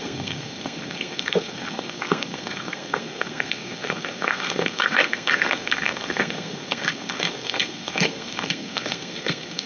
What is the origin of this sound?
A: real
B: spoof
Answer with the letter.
B